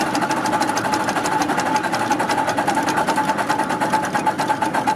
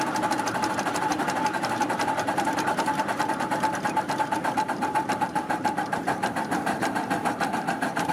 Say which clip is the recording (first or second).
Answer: first